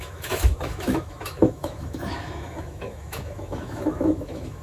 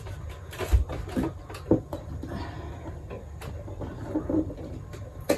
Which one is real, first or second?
second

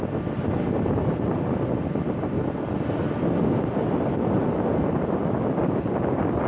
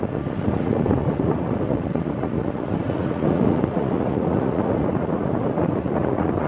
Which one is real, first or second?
first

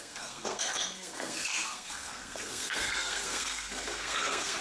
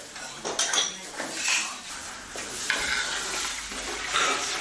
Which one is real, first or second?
second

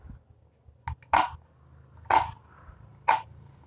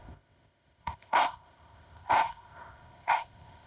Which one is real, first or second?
first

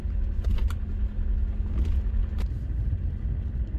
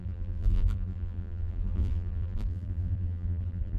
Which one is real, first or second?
first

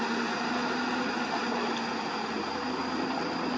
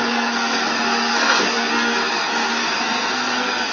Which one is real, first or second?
first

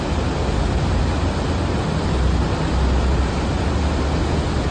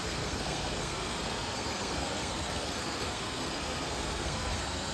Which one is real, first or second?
first